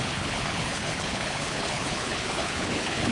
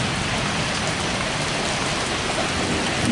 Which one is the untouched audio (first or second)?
second